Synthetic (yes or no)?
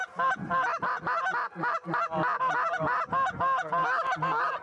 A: no